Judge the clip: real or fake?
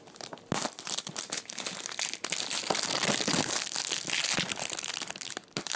real